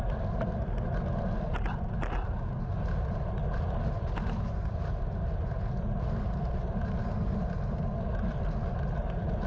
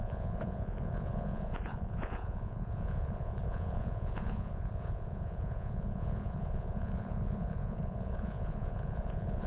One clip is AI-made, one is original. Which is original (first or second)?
first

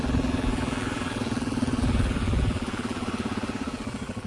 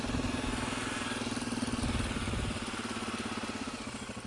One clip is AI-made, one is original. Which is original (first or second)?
second